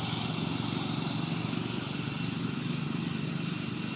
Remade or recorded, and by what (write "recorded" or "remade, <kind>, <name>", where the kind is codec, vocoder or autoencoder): recorded